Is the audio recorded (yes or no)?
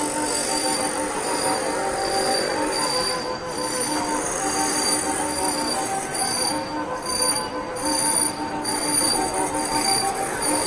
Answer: yes